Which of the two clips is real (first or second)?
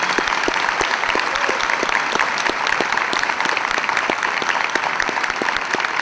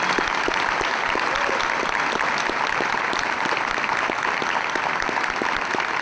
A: second